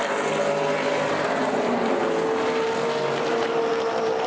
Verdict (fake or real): real